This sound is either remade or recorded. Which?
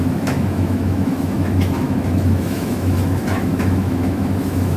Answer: remade